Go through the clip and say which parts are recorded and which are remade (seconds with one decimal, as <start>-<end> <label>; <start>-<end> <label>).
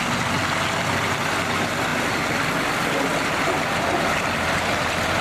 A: 0.0-5.2 recorded